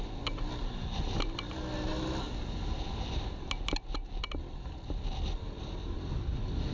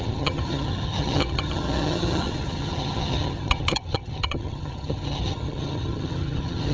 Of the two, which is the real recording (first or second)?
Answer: first